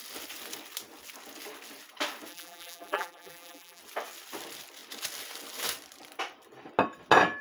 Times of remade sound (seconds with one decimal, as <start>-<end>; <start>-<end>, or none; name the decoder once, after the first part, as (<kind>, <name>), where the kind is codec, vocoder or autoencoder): 2.3-3.8 (vocoder, BigVGAN v2)